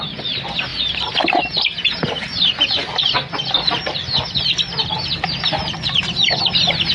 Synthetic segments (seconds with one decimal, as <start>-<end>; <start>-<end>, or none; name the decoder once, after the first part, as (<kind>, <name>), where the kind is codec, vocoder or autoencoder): none